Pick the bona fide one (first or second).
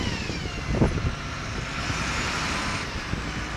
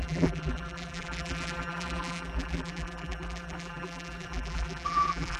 first